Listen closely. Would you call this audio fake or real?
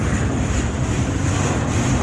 real